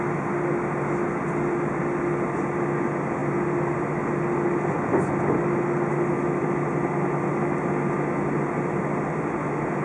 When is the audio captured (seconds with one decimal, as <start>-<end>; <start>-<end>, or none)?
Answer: 0.0-9.8